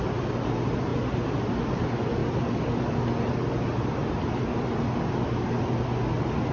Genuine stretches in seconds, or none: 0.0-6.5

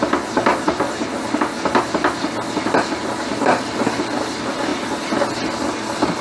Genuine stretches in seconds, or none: 0.0-6.2